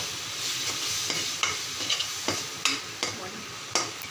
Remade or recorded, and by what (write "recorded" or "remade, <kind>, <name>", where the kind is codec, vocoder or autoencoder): recorded